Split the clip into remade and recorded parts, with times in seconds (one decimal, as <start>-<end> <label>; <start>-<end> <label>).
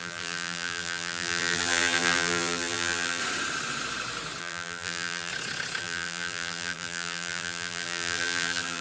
0.0-3.2 remade; 3.2-4.4 recorded; 4.4-5.3 remade; 5.3-5.8 recorded; 5.8-8.8 remade